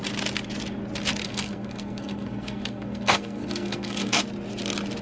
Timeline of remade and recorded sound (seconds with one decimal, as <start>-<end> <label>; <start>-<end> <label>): 0.0-1.2 recorded; 1.2-4.2 remade; 4.2-5.0 recorded